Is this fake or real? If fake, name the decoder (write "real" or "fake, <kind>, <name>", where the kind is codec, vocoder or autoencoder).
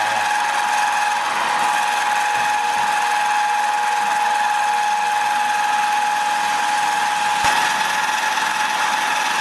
real